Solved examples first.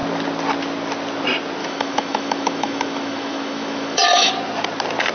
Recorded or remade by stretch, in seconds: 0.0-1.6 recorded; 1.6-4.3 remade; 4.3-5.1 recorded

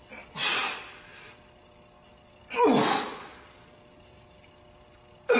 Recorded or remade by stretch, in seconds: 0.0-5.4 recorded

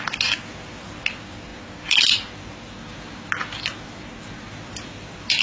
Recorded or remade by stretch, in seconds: 0.0-5.4 recorded

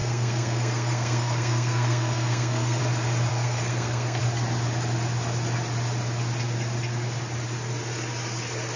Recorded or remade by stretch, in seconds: 0.0-2.8 remade; 2.8-3.3 recorded; 3.3-4.2 remade; 4.2-8.8 recorded